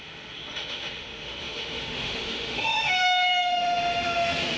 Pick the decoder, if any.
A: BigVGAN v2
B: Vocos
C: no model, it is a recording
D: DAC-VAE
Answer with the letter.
D